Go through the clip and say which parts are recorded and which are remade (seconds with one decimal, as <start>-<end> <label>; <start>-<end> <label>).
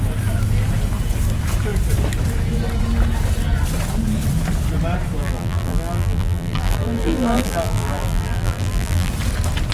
0.0-5.2 recorded; 5.2-9.1 remade; 9.1-9.7 recorded